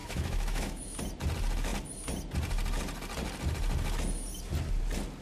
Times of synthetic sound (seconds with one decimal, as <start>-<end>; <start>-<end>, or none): 0.0-1.0